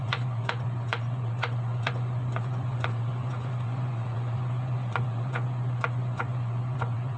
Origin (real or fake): fake